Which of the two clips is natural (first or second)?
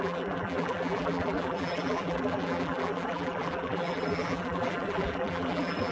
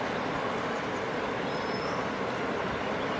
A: second